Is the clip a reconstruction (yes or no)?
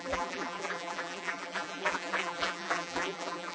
yes